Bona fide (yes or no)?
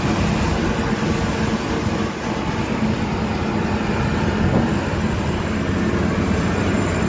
yes